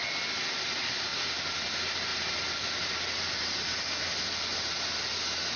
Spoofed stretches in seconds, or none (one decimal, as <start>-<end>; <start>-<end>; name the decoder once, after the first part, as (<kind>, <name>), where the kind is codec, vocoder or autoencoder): 2.1-3.8 (vocoder, BigVGAN v2); 4.5-5.1